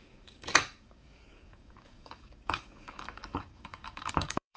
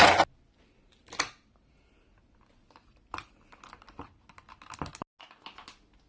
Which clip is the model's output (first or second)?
first